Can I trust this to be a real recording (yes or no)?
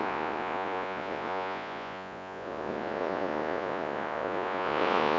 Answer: no